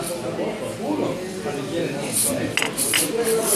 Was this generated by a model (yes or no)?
no